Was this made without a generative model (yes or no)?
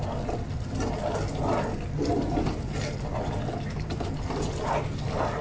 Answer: yes